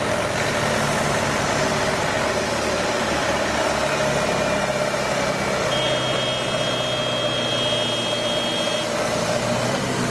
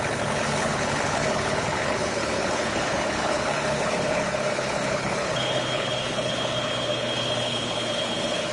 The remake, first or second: second